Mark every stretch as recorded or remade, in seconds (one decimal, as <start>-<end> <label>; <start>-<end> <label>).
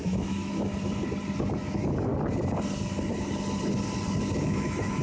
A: 0.0-0.7 remade; 0.7-1.4 recorded; 1.4-2.1 remade; 2.1-4.4 recorded; 4.4-5.0 remade